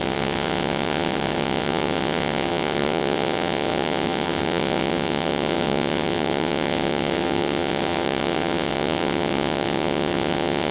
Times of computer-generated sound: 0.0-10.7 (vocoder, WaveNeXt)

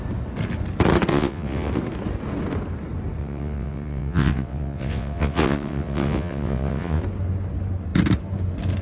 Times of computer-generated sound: 1.1-1.7 (vocoder, WaveNeXt); 3.2-7.0

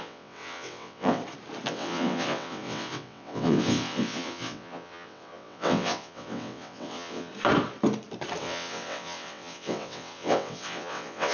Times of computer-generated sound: 0.0-1.2 (vocoder, WaveNeXt); 1.7-7.3; 8.4-11.3

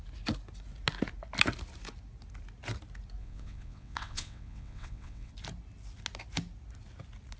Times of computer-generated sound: 3.2-5.3 (vocoder, WaveNeXt)

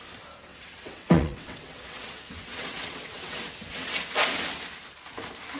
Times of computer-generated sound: 0.5-3.9 (vocoder, WaveNeXt)

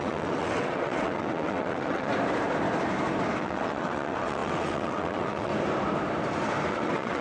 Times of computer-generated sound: 0.0-2.1 (vocoder, WaveNeXt); 3.4-5.5; 6.7-7.2

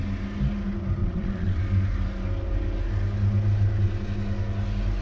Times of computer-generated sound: 1.0-1.6 (vocoder, WaveNeXt)